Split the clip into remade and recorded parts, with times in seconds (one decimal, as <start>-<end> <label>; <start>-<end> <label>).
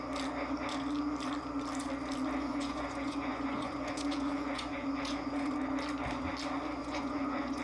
0.0-2.4 recorded; 2.4-5.5 remade; 5.5-6.8 recorded; 6.8-7.6 remade